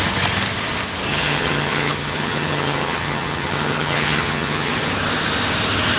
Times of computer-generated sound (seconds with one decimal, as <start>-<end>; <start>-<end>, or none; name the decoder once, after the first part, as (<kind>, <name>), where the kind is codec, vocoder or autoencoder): 1.1-4.7 (vocoder, HiFi-GAN)